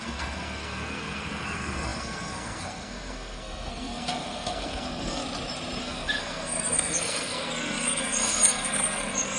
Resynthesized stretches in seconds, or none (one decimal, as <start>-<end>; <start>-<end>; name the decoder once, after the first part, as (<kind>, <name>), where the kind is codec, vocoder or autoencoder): 0.0-5.2 (codec, SNAC); 5.8-9.4